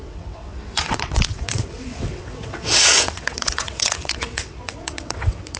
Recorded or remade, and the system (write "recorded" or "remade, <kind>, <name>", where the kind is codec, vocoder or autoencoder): remade, vocoder, WaveNeXt